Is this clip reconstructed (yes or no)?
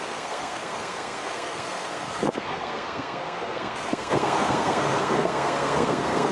yes